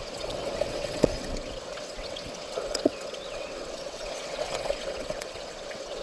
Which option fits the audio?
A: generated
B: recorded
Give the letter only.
A